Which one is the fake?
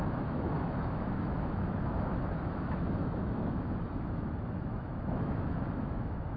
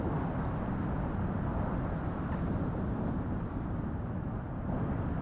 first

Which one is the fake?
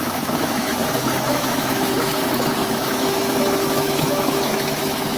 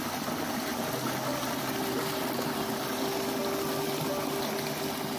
first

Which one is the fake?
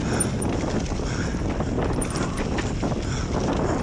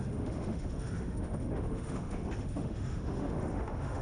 second